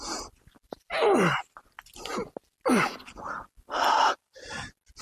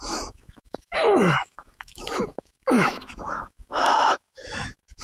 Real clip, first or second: first